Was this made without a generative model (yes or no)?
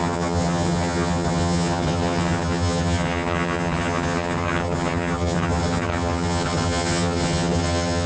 no